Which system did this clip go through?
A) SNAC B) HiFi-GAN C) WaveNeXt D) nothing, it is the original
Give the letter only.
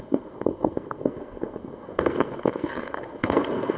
A